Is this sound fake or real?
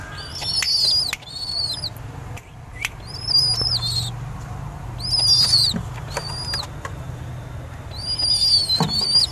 real